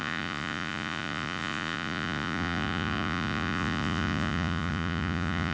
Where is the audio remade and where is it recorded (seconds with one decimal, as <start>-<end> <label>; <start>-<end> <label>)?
0.0-5.5 remade